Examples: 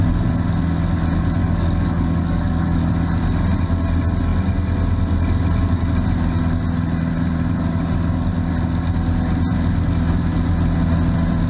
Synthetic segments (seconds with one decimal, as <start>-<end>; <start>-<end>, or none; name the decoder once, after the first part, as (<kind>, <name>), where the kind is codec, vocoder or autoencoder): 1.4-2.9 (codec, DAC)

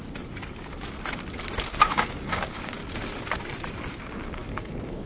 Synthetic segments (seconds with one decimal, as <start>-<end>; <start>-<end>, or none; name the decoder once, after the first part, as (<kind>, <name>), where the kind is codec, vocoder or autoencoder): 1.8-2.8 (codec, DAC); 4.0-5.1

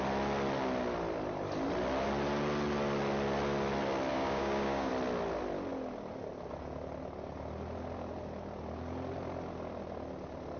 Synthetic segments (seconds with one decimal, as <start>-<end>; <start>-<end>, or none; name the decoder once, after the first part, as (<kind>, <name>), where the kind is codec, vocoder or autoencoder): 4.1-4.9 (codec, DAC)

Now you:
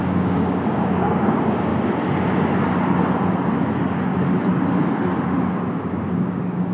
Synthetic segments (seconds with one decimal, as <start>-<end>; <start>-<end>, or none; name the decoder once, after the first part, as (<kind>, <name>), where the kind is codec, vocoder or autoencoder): 0.0-1.7 (codec, DAC); 5.7-6.7

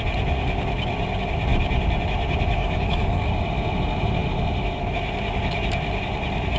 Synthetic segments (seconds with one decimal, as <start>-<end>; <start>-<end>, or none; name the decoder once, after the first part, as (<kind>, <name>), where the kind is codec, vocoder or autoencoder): 2.6-3.3 (codec, DAC)